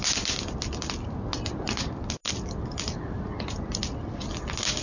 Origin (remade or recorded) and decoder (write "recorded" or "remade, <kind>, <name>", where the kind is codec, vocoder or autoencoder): recorded